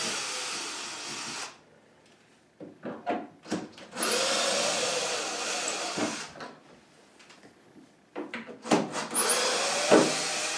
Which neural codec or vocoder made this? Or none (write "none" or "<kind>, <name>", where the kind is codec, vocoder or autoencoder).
none